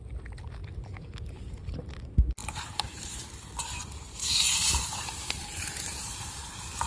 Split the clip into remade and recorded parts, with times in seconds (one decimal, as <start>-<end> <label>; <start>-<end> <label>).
0.0-2.4 recorded; 2.4-6.5 remade; 6.5-6.9 recorded